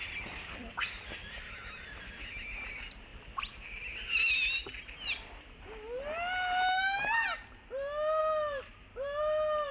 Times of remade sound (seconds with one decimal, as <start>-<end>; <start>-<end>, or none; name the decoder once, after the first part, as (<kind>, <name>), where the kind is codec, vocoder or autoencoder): none